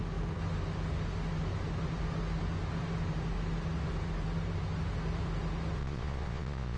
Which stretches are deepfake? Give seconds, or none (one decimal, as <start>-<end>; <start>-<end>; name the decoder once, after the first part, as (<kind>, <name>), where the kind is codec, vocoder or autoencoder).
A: 5.8-6.8 (vocoder, Vocos)